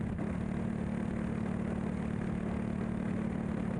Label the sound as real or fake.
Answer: real